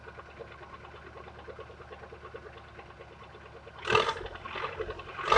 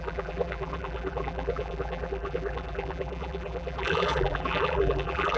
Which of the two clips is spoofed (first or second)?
second